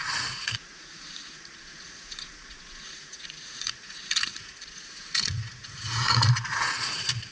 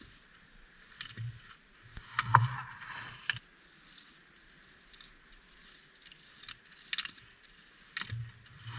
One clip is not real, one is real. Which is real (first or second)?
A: second